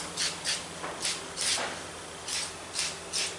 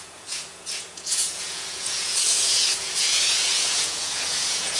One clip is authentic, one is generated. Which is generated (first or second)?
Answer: second